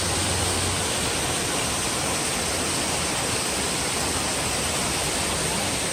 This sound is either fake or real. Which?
real